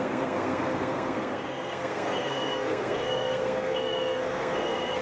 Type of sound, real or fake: fake